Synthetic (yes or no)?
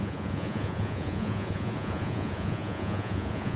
yes